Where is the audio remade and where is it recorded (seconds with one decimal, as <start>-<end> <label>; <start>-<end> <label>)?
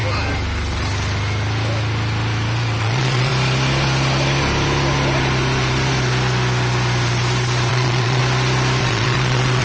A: 0.0-2.8 recorded; 2.8-3.3 remade; 3.3-7.7 recorded; 7.7-8.2 remade; 8.2-8.8 recorded; 8.8-9.6 remade